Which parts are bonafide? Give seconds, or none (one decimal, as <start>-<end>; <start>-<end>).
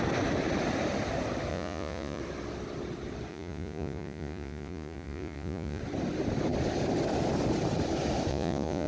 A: 0.0-1.5; 2.2-3.3; 5.8-8.3